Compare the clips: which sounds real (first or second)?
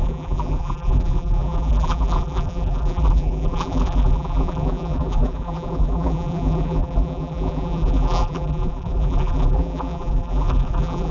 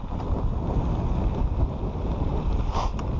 second